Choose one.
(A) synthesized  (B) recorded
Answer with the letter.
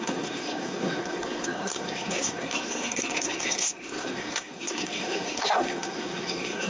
A